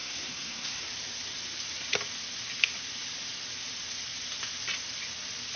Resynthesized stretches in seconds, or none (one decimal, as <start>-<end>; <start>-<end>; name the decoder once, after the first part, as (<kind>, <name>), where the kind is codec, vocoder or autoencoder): 0.0-0.8 (codec, SNAC)